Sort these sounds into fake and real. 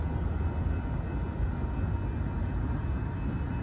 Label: real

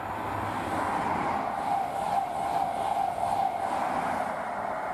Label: real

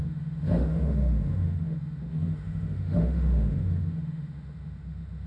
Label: fake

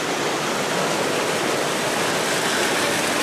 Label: real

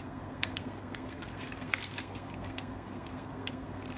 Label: fake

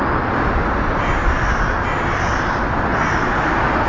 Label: real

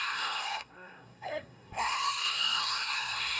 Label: fake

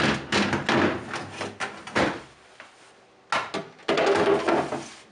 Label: real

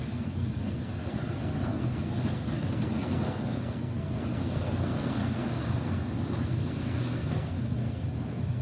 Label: fake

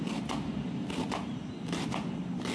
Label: real